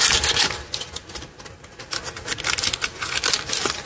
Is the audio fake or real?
real